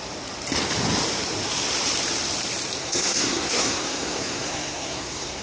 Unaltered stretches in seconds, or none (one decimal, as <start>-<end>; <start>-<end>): 0.0-2.8